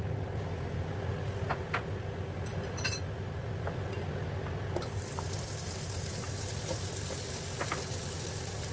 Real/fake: real